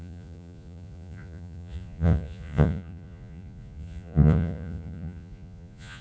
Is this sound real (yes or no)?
no